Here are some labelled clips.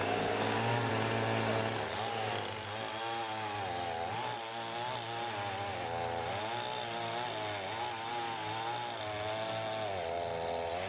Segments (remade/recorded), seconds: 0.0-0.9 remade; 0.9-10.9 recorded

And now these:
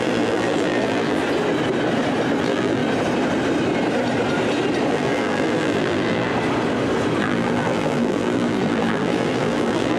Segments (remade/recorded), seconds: 0.0-1.2 remade; 1.2-2.4 recorded; 2.4-2.8 remade; 2.8-4.9 recorded; 4.9-6.3 remade; 6.3-7.2 recorded; 7.2-10.0 remade

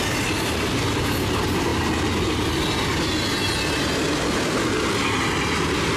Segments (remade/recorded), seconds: 0.0-6.0 recorded

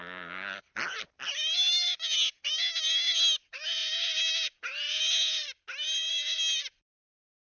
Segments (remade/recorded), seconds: 0.0-7.4 recorded

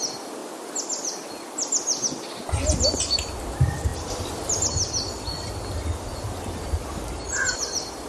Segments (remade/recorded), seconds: 0.0-3.9 recorded; 3.9-8.1 remade

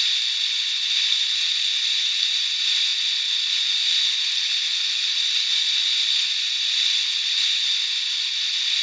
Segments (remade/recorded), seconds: 0.0-8.8 recorded

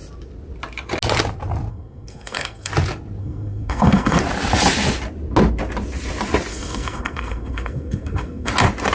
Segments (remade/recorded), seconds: 0.0-1.7 recorded; 1.7-2.7 remade; 2.7-3.2 recorded; 3.2-4.2 remade; 4.2-6.5 recorded; 6.5-8.5 remade; 8.5-8.9 recorded

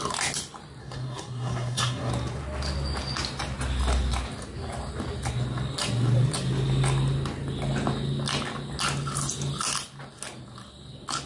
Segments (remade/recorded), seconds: 0.0-0.8 recorded; 0.8-2.1 remade; 2.1-11.3 recorded